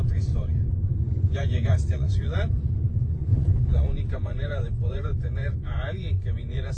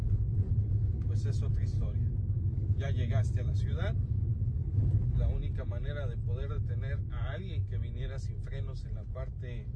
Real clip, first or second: second